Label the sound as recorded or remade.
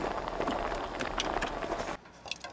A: recorded